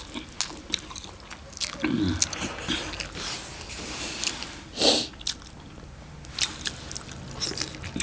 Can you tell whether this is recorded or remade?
recorded